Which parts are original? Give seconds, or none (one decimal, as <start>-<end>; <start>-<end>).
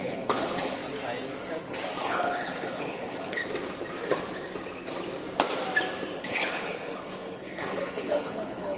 0.8-2.0; 3.4-6.2